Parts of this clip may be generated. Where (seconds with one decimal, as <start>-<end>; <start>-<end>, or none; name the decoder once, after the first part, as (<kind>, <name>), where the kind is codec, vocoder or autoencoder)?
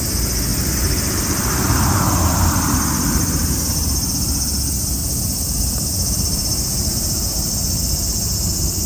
0.5-3.7 (vocoder, BigVGAN v2); 5.0-7.5